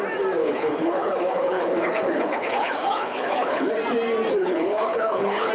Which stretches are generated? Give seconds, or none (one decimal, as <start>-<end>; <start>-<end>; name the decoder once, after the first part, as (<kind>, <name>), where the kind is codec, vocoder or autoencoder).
0.4-3.7 (codec, HILCodec); 4.4-5.5